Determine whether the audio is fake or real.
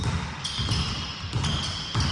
real